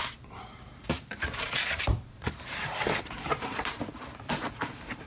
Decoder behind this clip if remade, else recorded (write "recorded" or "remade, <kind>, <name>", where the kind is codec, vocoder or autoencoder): remade, vocoder, BigVGAN v2